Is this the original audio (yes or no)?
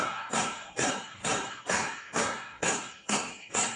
no